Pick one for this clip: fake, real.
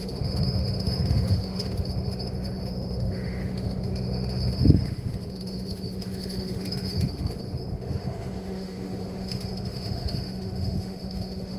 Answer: fake